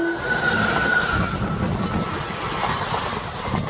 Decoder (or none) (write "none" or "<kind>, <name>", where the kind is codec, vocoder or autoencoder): none